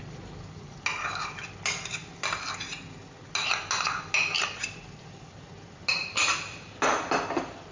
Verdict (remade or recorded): recorded